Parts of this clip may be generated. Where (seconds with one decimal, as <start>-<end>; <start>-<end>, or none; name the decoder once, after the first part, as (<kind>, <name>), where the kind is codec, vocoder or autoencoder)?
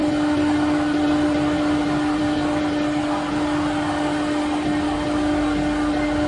none